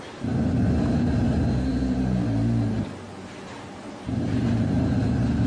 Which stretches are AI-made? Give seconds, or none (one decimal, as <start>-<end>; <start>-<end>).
0.0-5.5